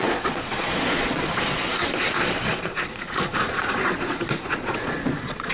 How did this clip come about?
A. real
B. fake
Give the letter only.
B